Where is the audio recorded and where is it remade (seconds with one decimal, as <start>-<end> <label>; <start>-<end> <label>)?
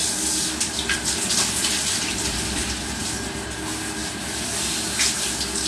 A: 0.0-2.9 remade; 2.9-4.0 recorded; 4.0-5.3 remade; 5.3-5.7 recorded